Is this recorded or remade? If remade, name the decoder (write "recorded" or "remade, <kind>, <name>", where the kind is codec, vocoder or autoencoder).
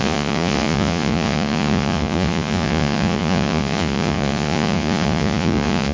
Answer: remade, vocoder, Vocos